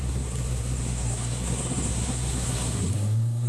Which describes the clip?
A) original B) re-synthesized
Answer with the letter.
B